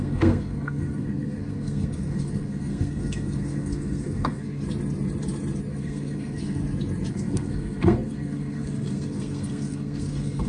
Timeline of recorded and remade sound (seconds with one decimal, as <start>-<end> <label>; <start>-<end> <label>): 0.0-4.6 remade; 4.6-5.7 recorded; 5.7-6.6 remade; 6.6-7.1 recorded; 7.1-10.5 remade